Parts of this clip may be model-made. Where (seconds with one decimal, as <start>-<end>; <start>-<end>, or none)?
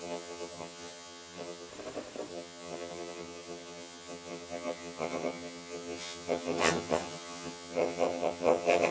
0.0-1.7; 2.3-8.9